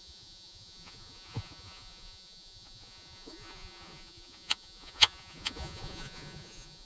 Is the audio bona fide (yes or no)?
no